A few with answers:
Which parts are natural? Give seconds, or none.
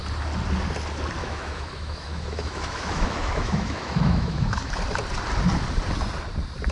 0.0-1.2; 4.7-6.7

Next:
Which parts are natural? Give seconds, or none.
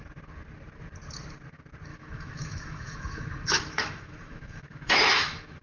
0.0-1.9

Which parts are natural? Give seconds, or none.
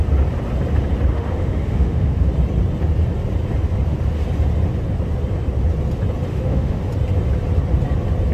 0.0-1.1; 2.3-6.3; 6.8-8.3